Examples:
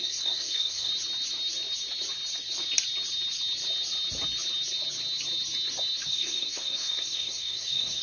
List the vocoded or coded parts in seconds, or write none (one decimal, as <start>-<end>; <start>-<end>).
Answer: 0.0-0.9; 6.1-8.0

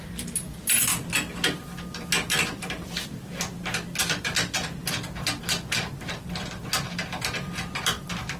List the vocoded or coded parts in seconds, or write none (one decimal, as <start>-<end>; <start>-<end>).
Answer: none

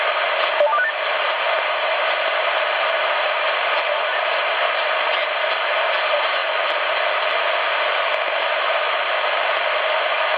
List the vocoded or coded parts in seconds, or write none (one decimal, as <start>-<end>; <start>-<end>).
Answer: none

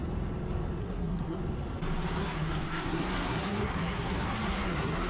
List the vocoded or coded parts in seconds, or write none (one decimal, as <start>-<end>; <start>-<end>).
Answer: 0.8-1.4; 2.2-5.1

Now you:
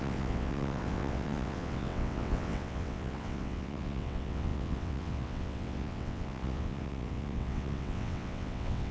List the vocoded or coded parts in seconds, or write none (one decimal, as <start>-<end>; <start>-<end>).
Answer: 0.0-8.9

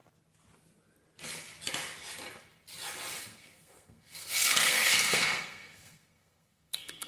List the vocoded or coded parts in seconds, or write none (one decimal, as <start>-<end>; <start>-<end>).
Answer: 3.2-7.1